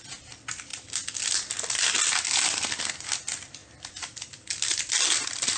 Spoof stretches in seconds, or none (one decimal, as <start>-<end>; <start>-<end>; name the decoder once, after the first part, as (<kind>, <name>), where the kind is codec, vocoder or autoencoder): none